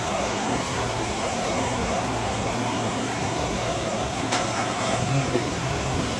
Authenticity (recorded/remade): remade